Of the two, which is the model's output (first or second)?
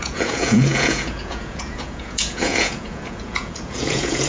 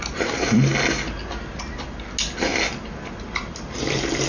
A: first